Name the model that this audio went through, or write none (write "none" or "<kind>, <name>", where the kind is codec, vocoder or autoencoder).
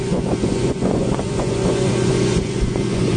vocoder, Vocos